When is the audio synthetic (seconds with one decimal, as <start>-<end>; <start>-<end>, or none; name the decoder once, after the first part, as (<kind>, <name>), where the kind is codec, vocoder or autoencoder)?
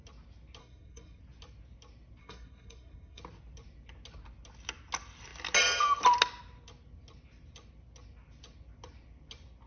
0.6-1.2 (codec, SNAC); 2.2-3.2